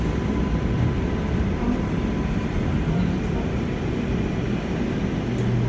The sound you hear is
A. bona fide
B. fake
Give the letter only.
A